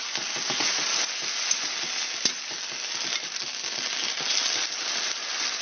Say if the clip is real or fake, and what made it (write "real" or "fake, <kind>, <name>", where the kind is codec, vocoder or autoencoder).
real